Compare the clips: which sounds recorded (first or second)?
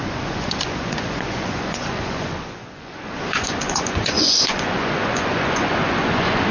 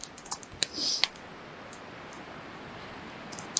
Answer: second